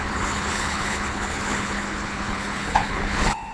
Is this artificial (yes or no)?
yes